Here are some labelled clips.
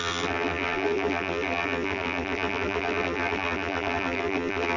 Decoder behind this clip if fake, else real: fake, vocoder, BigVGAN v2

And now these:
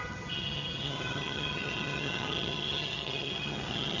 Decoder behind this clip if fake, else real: fake, vocoder, HiFi-GAN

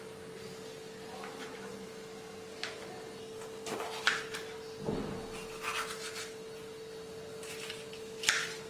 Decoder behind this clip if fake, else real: real